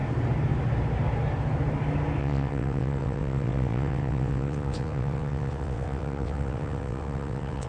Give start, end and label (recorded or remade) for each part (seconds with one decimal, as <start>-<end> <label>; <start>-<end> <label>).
0.0-2.2 recorded; 2.2-7.7 remade